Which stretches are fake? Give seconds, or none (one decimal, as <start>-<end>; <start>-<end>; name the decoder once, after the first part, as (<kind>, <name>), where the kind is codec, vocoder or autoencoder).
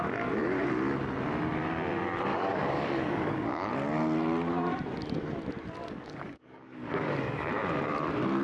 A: 2.3-3.7 (codec, DAC); 5.8-7.5